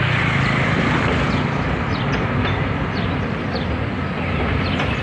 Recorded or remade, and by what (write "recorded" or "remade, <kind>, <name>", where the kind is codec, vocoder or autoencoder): recorded